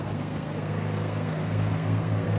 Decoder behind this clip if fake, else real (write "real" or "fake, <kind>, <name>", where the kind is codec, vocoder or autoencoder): fake, codec, SNAC